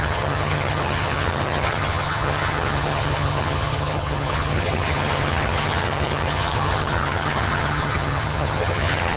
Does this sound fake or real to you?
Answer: fake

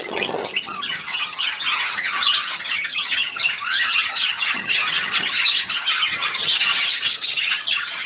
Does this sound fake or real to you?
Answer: fake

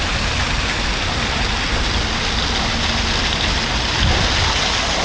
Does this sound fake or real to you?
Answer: real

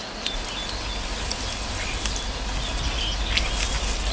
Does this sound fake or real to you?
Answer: real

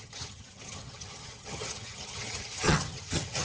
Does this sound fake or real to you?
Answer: fake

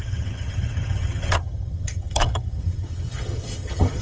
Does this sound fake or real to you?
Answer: fake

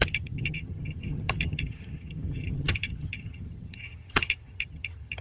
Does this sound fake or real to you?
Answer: fake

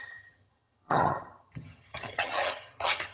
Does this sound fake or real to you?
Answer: fake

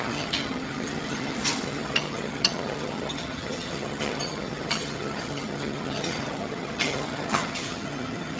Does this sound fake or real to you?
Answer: fake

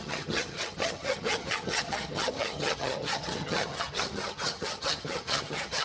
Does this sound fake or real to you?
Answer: fake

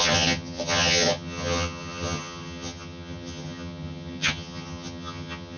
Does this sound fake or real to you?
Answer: fake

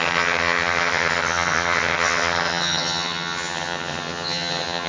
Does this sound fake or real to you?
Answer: fake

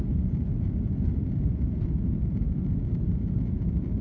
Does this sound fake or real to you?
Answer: real